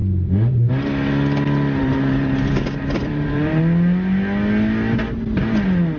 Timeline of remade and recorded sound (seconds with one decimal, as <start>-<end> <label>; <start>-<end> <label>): 0.0-1.8 recorded; 1.8-3.6 remade; 3.6-6.0 recorded